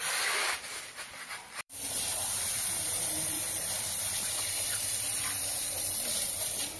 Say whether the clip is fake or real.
fake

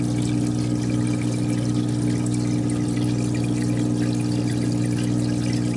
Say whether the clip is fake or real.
real